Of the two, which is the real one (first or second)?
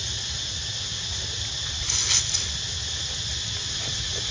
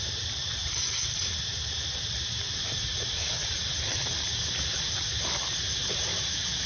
first